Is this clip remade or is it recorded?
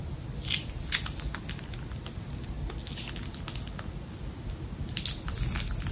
recorded